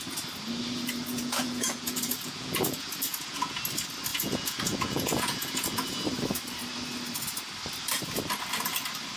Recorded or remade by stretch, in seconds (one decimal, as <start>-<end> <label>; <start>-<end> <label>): 0.0-1.1 recorded; 1.1-3.6 remade; 3.6-4.1 recorded; 4.1-6.0 remade; 6.0-9.2 recorded